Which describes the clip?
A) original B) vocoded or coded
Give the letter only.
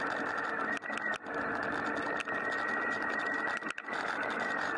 A